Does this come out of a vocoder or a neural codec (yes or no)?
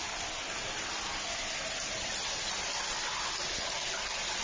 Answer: no